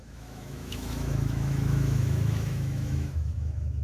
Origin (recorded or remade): remade